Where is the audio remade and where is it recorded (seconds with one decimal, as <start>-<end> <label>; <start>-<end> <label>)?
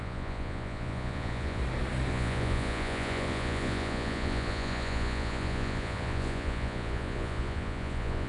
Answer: 0.0-1.6 remade; 1.6-2.1 recorded; 2.1-8.3 remade